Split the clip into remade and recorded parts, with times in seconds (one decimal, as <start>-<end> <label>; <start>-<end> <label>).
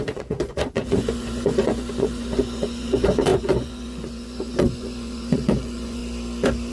0.0-6.0 remade; 6.0-6.7 recorded